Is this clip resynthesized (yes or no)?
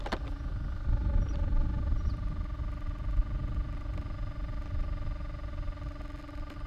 no